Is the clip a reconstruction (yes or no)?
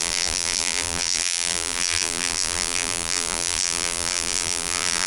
yes